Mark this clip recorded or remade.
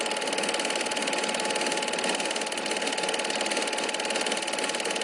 recorded